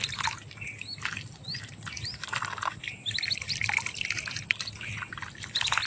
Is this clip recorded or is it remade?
recorded